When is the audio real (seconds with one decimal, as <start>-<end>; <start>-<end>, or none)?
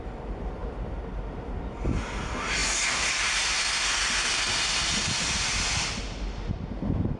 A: 0.0-7.2